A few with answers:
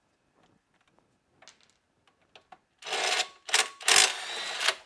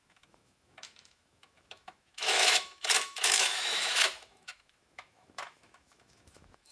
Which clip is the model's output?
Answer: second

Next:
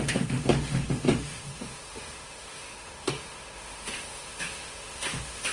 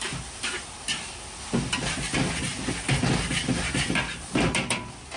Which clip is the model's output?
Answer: first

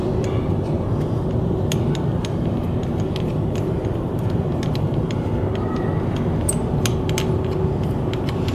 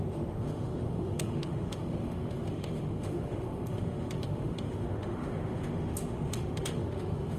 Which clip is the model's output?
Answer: second